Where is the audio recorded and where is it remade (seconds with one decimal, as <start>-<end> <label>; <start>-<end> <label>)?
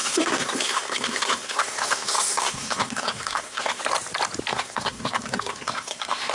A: 0.0-3.8 remade; 3.8-4.5 recorded; 4.5-6.3 remade